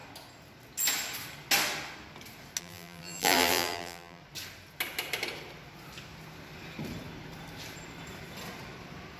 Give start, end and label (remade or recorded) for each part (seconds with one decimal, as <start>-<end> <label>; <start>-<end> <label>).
0.0-2.6 recorded; 2.6-4.2 remade; 4.2-9.2 recorded